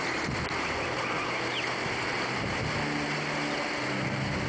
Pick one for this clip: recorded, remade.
recorded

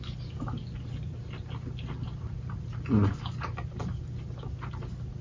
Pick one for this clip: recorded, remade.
recorded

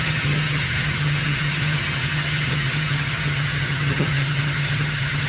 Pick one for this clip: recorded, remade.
remade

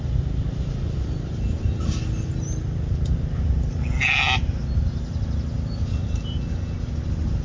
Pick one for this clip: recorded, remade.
recorded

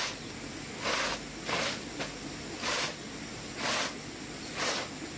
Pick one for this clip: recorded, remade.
recorded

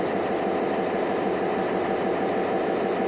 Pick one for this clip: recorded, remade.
recorded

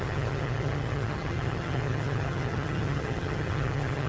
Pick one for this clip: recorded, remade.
remade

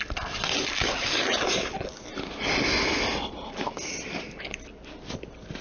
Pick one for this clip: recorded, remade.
recorded